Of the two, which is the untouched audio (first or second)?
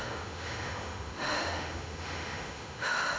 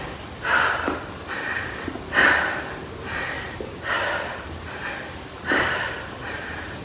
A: second